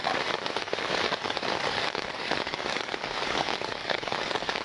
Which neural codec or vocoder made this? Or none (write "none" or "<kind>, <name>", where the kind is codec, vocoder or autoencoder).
codec, DAC